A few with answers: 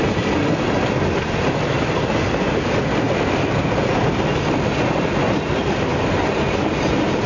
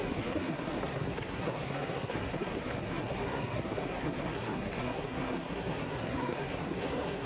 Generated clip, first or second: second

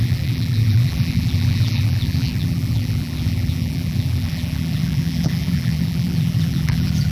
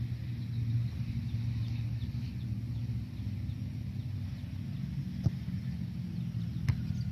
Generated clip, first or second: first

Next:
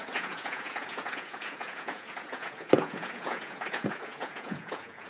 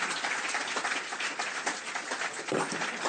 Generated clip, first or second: first